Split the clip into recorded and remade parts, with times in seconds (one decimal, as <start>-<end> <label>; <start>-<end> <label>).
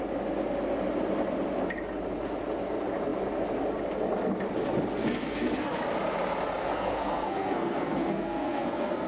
0.0-5.0 recorded; 5.0-5.8 remade; 5.8-6.6 recorded; 6.6-9.1 remade